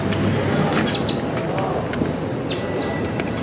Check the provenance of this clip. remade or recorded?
recorded